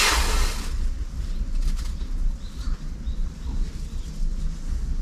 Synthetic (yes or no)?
no